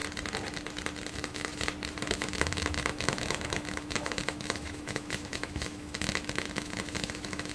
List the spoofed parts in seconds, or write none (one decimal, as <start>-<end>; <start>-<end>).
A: 1.1-1.5; 2.1-7.5

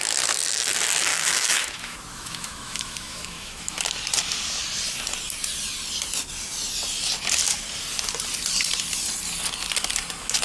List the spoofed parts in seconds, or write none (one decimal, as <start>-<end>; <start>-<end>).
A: 1.1-3.8

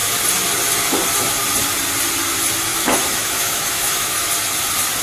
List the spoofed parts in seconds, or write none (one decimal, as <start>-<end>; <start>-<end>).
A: 2.7-4.3

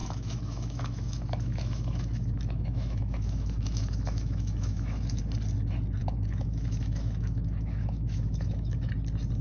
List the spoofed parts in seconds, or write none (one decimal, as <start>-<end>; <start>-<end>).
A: 0.0-5.2; 6.0-8.9

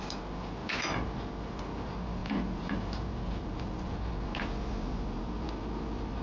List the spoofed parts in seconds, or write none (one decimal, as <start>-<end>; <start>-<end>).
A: none

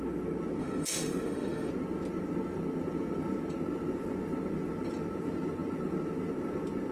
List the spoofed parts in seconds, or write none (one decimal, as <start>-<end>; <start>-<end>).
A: 0.6-1.7